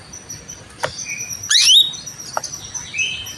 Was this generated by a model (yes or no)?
no